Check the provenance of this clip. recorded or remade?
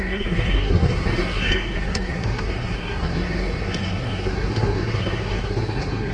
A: remade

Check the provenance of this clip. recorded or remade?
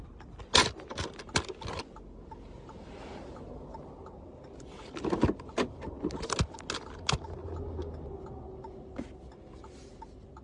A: recorded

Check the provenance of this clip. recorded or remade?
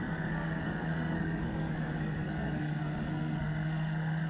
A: remade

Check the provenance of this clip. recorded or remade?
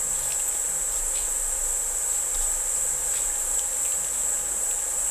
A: recorded